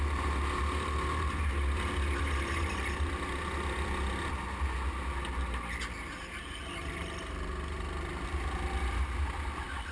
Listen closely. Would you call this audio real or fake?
real